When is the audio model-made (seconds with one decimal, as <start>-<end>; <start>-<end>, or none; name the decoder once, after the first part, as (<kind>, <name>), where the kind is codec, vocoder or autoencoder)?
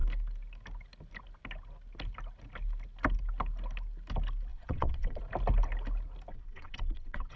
4.5-5.2 (vocoder, WaveNeXt); 6.3-7.4